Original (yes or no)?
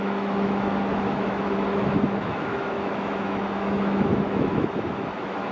no